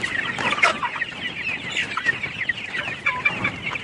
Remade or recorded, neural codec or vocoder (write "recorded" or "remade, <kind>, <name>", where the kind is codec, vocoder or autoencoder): recorded